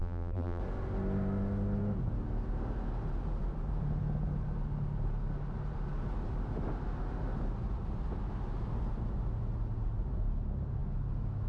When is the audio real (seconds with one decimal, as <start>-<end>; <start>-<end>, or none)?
0.6-11.5